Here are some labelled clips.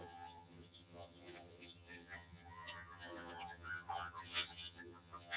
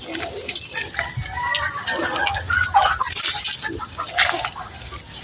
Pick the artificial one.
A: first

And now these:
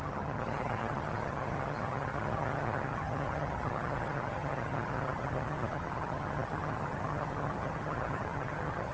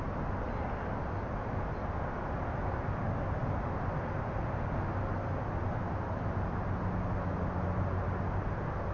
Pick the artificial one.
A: first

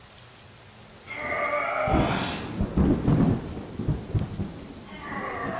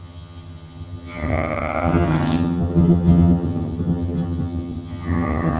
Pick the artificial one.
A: second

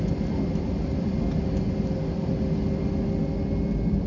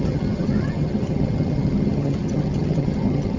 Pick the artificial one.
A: second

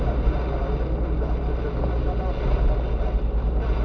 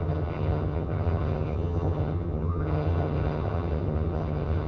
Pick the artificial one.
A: second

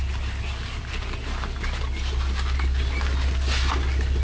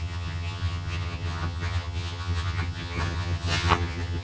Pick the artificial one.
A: second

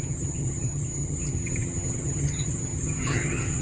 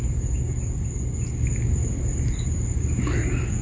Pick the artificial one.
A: first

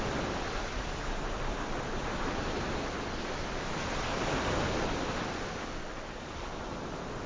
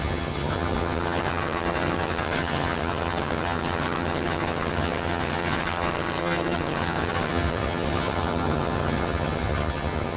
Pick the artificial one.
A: second